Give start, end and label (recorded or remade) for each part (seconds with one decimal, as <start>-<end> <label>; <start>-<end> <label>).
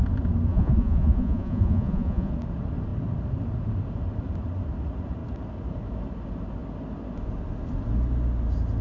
0.0-0.5 recorded; 0.5-2.3 remade; 2.3-8.8 recorded